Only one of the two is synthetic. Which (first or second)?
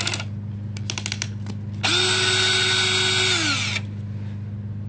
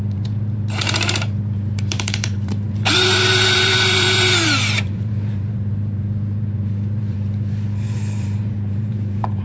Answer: second